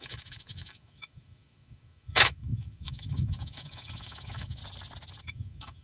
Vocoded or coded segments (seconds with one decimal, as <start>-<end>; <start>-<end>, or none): 0.0-4.6; 5.2-5.8